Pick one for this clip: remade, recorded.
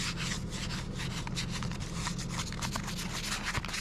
recorded